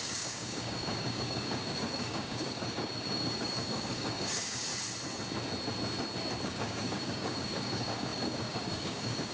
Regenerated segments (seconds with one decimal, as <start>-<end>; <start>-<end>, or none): 0.0-4.7; 6.4-9.3